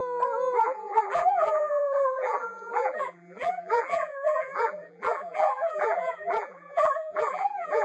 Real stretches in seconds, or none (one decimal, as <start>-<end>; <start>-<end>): 0.0-0.6